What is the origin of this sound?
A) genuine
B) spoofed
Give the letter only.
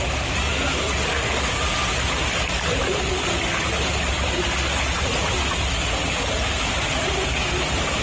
A